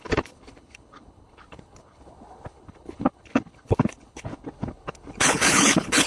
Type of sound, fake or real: fake